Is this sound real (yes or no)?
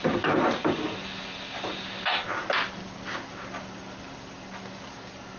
yes